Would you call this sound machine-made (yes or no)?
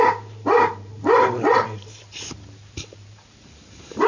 yes